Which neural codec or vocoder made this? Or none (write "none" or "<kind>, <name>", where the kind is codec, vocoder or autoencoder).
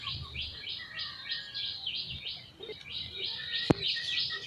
none